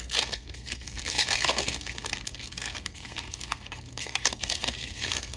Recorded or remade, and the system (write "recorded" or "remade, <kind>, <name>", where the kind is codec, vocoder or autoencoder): remade, codec, SNAC